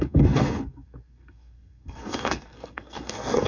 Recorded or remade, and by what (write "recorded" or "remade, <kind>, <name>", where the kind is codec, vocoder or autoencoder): remade, codec, SNAC